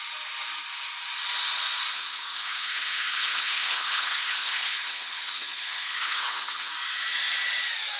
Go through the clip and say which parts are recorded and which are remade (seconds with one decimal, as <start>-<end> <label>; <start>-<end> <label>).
0.0-1.9 recorded; 1.9-6.7 remade; 6.7-8.0 recorded